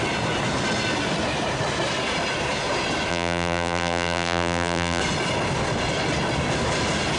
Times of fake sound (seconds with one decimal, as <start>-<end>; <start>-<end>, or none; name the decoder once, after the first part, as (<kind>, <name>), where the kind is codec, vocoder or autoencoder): 3.1-5.0 (vocoder, BigVGAN v2)